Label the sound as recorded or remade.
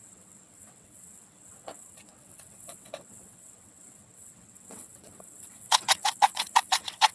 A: remade